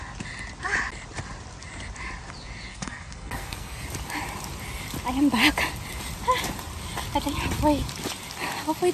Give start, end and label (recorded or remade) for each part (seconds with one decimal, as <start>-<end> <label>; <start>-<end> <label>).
0.0-2.7 recorded; 2.7-3.8 remade; 3.8-8.9 recorded